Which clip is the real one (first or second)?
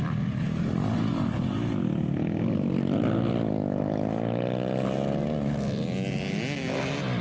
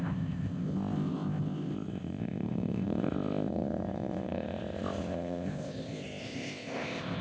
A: first